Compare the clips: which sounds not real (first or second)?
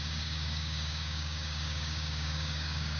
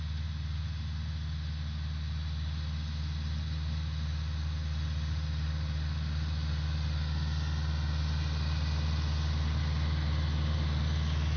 first